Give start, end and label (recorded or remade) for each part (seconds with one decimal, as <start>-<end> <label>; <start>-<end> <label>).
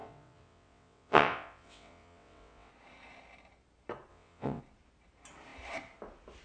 0.0-2.7 remade; 2.7-4.1 recorded; 4.1-4.6 remade; 4.6-6.4 recorded